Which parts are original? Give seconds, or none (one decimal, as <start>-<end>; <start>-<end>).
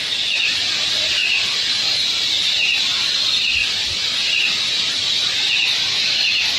0.0-6.6